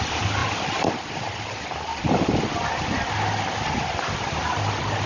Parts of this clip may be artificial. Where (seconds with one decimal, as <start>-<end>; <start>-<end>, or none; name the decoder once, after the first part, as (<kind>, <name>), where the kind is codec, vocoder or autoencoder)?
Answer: 0.4-1.4 (vocoder, BigVGAN v2); 1.9-2.5